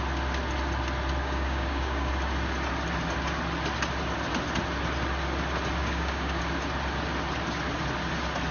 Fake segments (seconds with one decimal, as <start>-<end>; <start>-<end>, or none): 1.2-2.1; 5.8-6.4